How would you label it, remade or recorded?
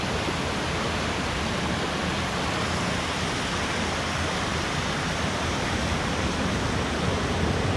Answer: recorded